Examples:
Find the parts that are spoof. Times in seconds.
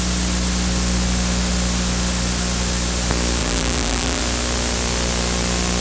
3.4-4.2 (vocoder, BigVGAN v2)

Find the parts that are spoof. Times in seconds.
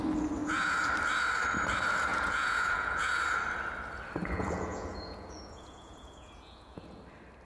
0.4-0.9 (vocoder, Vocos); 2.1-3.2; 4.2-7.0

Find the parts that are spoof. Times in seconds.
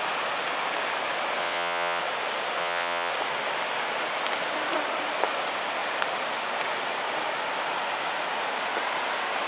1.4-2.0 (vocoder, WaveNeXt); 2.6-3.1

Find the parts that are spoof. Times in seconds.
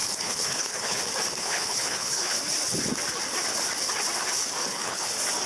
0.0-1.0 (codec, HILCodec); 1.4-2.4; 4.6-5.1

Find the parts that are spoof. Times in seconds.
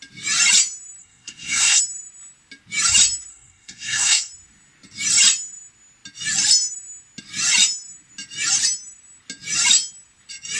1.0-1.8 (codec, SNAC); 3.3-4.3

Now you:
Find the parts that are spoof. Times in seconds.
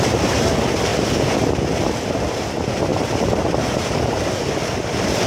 none